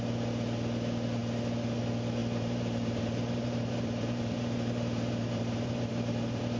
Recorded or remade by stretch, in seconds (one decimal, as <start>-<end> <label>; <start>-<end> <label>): 0.0-2.2 recorded; 2.2-6.6 remade